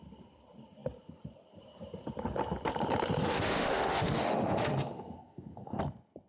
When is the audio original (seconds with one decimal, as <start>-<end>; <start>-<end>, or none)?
0.0-3.2; 5.8-6.3